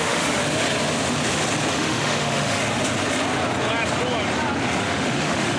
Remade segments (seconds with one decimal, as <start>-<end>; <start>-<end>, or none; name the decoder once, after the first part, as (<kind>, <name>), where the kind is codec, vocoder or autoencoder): 0.0-0.4 (autoencoder, DAC-VAE); 1.7-2.6; 4.8-5.6